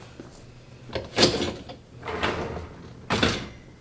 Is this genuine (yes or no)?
yes